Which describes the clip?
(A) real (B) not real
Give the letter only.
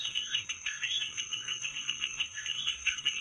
B